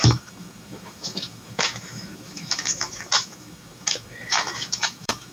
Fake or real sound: fake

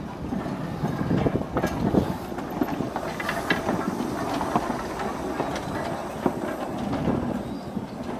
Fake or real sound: real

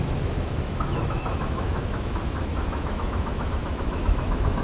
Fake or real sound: fake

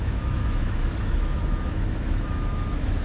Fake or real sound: fake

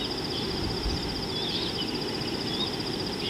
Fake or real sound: real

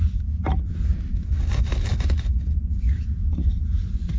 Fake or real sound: real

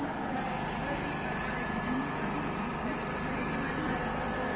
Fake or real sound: real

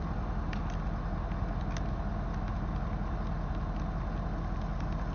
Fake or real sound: real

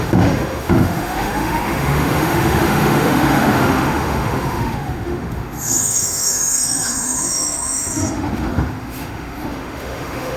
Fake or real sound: fake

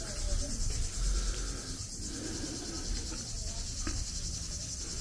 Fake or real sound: real